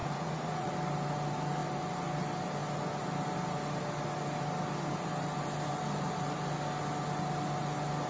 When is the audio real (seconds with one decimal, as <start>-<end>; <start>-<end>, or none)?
0.7-8.1